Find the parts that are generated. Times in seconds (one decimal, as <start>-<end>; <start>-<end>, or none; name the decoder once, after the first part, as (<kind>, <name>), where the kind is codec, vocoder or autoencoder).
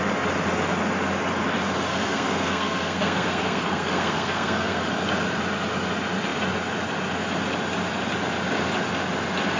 1.9-4.8 (codec, SNAC)